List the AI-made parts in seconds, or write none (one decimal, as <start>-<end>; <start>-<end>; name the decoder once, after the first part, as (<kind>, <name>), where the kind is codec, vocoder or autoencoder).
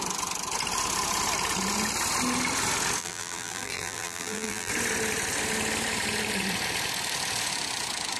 3.0-4.7 (vocoder, BigVGAN v2)